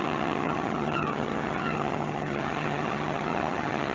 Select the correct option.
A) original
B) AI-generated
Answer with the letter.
B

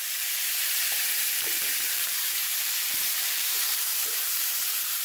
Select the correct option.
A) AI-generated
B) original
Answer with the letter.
A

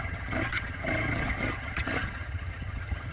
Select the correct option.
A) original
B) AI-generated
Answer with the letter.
B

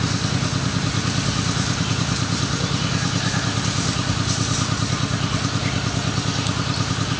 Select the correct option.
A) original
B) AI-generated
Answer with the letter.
A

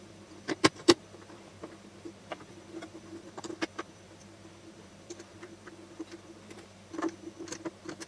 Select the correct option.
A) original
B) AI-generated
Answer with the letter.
B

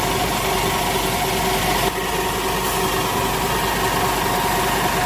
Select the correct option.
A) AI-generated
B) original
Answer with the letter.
B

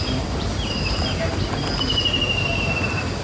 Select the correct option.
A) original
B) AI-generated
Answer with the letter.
A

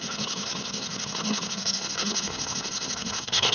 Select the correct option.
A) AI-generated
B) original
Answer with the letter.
A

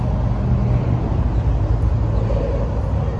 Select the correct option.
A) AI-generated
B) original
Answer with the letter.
B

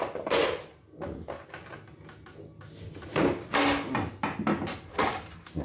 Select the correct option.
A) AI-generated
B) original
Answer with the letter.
B